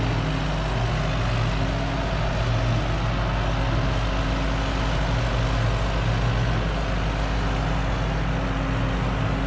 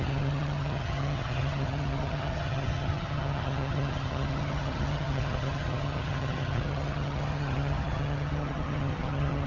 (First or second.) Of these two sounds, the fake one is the second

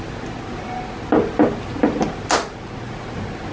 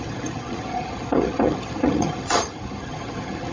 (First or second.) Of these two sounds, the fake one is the second